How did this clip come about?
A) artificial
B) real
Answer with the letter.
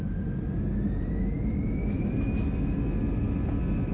B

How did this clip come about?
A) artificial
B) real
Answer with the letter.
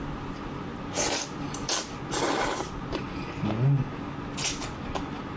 B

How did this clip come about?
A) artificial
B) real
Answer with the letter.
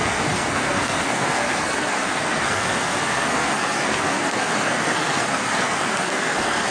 A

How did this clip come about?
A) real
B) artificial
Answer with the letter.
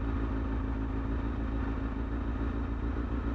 A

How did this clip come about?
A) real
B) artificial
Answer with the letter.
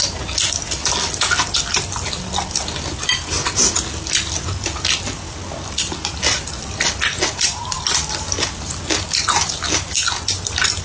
A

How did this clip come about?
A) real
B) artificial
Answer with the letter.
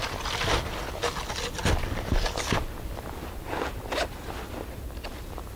A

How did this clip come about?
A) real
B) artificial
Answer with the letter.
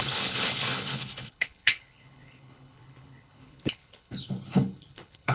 B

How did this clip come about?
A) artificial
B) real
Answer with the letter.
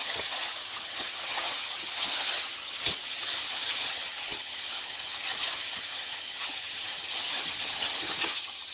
A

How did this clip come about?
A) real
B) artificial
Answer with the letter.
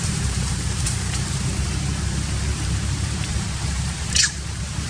B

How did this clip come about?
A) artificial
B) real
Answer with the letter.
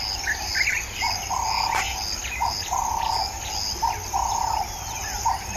B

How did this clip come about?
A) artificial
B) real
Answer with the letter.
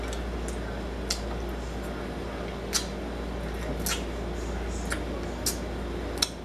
B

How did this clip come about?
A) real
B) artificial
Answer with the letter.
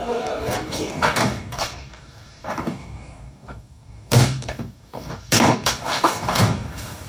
B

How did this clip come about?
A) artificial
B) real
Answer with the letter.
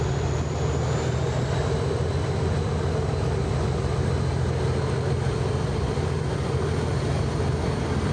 B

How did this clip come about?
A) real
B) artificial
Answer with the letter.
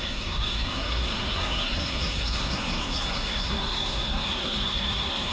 B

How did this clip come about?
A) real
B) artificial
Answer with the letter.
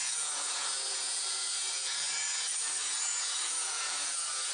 B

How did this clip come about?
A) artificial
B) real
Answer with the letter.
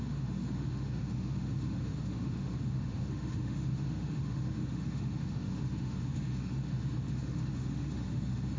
A